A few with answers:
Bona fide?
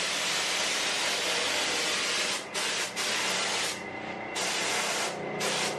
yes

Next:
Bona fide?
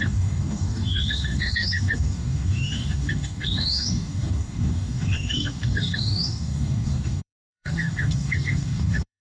no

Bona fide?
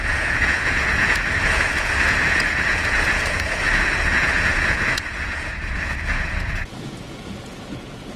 no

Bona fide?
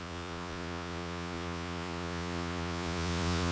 no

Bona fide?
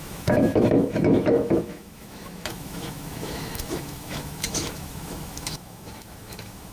no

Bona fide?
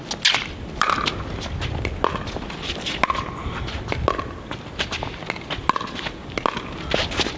yes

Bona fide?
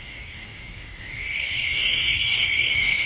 no